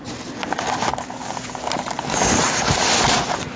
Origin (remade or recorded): recorded